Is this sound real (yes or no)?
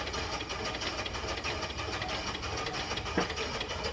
yes